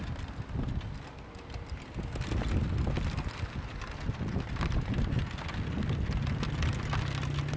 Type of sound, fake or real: real